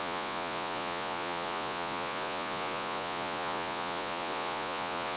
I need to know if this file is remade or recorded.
remade